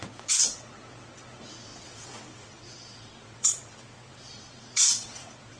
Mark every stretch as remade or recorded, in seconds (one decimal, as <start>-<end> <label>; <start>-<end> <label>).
0.0-5.6 remade